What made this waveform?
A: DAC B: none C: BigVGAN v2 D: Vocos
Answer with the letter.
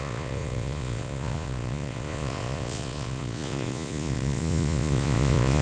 D